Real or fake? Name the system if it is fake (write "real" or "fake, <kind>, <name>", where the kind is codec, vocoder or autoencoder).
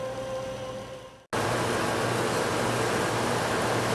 real